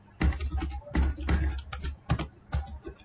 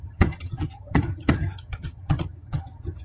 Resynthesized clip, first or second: second